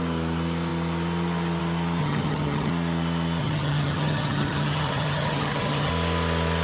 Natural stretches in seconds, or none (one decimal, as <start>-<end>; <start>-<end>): 0.0-2.0; 2.7-3.4; 5.9-6.6